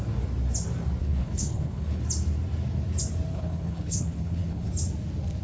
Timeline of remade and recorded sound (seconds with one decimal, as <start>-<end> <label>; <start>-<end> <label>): 0.0-1.0 recorded; 1.0-2.0 remade; 2.0-3.3 recorded; 3.3-4.7 remade; 4.7-5.4 recorded

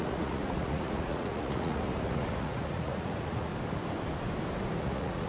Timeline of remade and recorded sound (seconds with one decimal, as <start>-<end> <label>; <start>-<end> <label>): 0.0-3.5 remade; 3.5-4.8 recorded; 4.8-5.3 remade

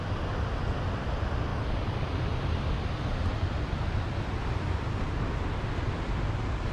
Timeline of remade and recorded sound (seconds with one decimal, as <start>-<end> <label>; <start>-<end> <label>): 0.0-1.5 recorded; 1.5-2.7 remade; 2.7-6.7 recorded